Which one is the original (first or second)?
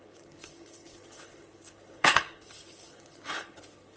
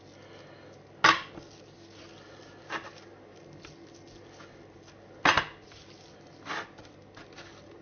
second